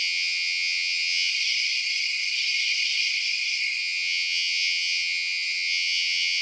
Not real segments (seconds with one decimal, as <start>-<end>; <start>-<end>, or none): 0.0-1.3; 3.8-6.4